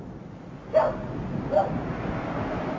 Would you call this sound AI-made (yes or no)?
no